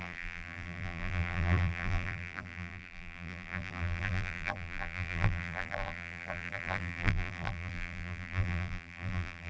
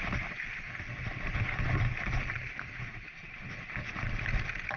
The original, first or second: second